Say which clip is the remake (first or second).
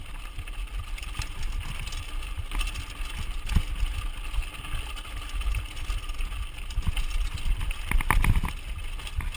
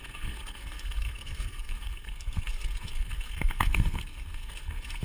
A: second